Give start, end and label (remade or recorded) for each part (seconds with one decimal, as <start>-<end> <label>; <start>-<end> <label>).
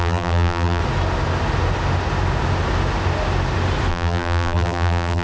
0.0-0.8 remade; 0.8-3.9 recorded; 3.9-5.2 remade